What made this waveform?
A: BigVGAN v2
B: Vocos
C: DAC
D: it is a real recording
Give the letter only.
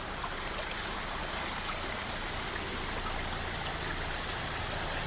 D